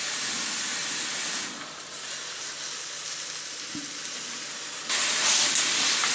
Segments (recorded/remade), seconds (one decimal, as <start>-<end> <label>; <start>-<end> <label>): 0.0-6.1 recorded